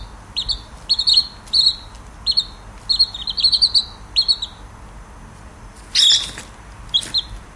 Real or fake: real